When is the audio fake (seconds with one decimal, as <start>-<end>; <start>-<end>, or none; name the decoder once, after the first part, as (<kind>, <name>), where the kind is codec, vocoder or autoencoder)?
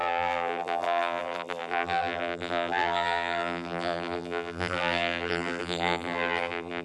0.0-6.8 (vocoder, BigVGAN v2)